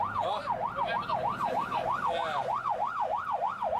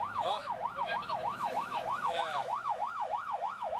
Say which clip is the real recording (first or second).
first